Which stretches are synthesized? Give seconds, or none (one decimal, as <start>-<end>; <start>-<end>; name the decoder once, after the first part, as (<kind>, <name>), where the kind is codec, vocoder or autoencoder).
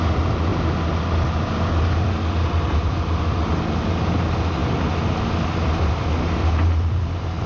none